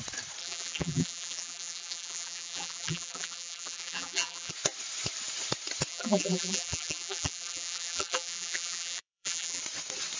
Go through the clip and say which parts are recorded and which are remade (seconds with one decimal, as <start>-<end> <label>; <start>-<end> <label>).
0.0-0.4 recorded; 0.4-4.5 remade; 4.5-5.9 recorded; 5.9-9.6 remade; 9.6-10.2 recorded